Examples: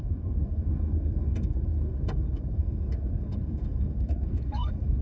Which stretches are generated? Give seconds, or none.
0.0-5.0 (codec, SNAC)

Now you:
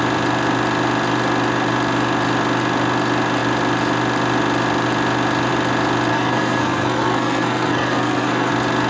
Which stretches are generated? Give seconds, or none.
6.1-8.5 (codec, SNAC)

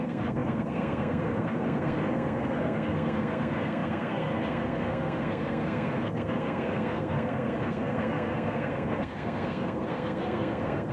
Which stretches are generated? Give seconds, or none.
0.0-10.9 (codec, SNAC)

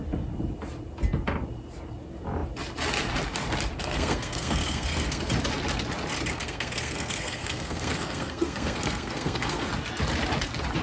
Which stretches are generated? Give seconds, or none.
3.8-5.2 (codec, SNAC); 6.3-9.7

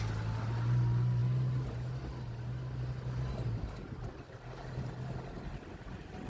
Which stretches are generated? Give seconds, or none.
none

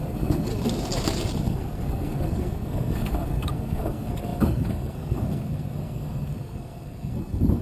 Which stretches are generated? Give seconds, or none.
0.0-0.5 (codec, SNAC); 1.4-7.6

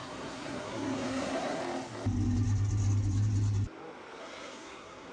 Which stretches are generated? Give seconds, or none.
0.0-1.6 (codec, SNAC); 4.2-5.1